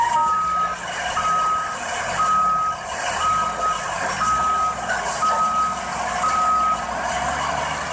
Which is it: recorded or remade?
recorded